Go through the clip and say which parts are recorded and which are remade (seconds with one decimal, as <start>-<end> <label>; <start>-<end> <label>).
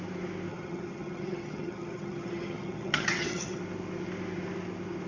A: 0.0-0.5 recorded; 0.5-3.6 remade; 3.6-5.1 recorded